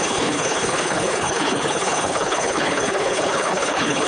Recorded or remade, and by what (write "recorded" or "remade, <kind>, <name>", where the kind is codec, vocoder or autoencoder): remade, codec, HILCodec